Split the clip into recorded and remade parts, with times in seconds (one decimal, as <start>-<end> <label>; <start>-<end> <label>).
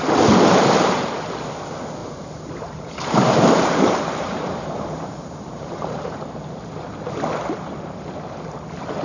0.0-2.0 recorded; 2.0-6.7 remade; 6.7-9.0 recorded